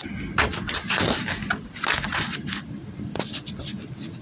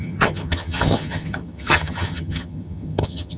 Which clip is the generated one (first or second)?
second